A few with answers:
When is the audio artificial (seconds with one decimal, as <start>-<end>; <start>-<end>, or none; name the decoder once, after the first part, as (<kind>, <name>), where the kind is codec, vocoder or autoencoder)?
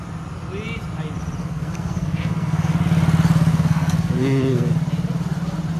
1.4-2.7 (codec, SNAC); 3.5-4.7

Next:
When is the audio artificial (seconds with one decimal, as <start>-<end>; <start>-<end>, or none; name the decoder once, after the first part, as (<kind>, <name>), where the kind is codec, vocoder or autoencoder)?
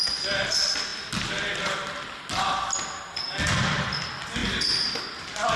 none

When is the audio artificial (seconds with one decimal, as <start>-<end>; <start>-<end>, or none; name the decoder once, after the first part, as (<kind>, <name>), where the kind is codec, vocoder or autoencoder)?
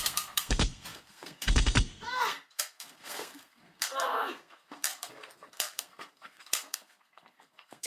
0.0-7.9 (codec, SNAC)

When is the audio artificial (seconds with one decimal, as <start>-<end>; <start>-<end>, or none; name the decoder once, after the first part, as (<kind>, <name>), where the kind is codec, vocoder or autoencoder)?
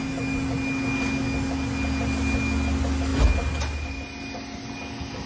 none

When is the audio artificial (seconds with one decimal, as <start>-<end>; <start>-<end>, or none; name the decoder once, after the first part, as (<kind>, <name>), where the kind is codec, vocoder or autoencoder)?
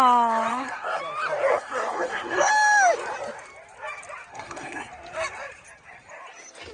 0.5-1.0 (codec, SNAC); 1.5-2.5; 4.3-4.9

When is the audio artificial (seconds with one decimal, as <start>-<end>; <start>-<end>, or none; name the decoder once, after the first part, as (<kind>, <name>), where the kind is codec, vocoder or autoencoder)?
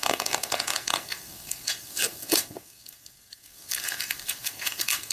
0.0-5.1 (codec, SNAC)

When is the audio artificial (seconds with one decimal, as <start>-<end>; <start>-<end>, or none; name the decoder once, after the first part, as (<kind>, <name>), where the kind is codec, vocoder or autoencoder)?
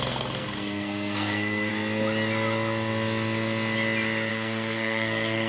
0.0-1.7 (codec, SNAC); 4.3-5.5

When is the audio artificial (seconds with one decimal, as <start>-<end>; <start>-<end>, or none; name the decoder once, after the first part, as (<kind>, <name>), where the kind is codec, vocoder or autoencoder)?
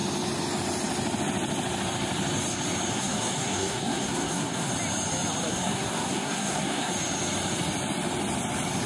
2.9-4.7 (codec, SNAC); 5.5-6.9